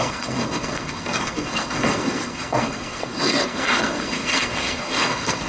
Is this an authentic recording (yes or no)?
no